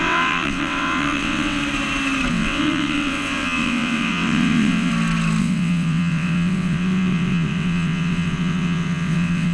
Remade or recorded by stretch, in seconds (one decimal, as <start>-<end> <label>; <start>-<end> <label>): 0.0-1.6 remade; 1.6-2.3 recorded; 2.3-4.9 remade; 4.9-5.4 recorded; 5.4-9.5 remade